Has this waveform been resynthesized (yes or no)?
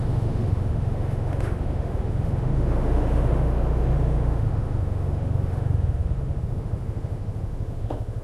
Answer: yes